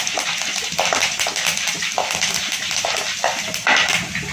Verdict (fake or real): real